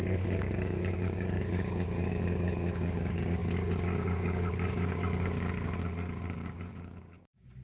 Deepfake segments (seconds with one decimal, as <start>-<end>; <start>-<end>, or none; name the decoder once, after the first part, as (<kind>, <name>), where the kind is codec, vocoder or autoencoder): 0.0-7.6 (codec, DAC)